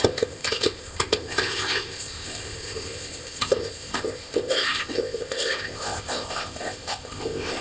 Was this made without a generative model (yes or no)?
no